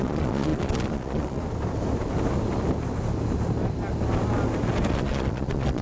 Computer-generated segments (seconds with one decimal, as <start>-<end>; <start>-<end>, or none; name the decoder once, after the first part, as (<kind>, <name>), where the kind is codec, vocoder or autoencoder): 0.0-1.4 (vocoder, Vocos); 4.9-5.8